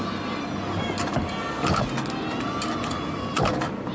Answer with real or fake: real